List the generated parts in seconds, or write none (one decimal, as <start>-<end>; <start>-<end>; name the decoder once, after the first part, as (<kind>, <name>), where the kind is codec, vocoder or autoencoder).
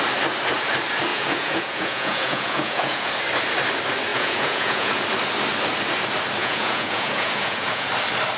1.1-3.1 (vocoder, Vocos); 4.1-4.9; 6.4-7.9